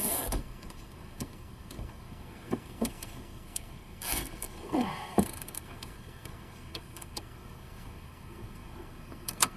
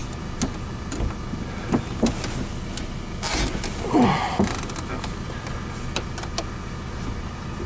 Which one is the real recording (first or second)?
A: second